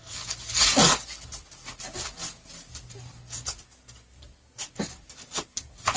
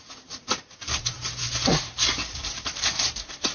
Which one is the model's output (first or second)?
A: second